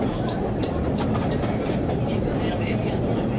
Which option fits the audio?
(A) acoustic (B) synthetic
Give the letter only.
B